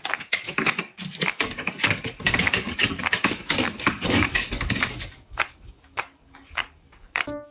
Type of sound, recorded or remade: remade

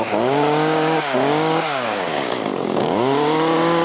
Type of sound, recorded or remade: remade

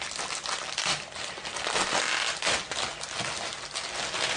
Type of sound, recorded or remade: recorded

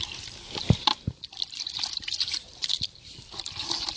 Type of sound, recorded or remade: recorded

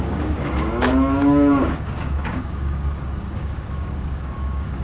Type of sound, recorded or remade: remade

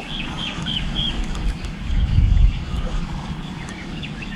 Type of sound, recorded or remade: remade